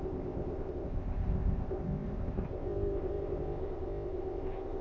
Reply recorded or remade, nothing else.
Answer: remade